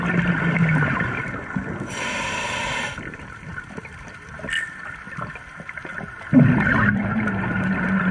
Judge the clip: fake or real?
real